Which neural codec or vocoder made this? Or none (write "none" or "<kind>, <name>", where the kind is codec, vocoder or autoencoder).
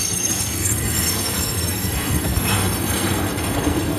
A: codec, SNAC